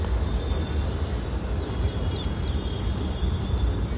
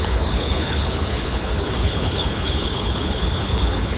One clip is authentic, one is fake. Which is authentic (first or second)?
first